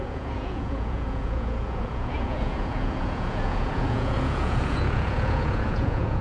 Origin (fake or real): fake